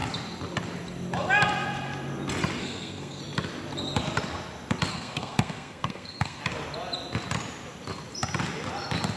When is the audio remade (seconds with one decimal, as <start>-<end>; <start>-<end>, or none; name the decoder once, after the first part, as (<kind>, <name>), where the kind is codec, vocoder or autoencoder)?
2.6-3.2 (codec, SNAC); 4.9-6.4